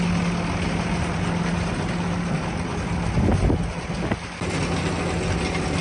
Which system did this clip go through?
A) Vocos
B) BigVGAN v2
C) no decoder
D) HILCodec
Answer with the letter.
C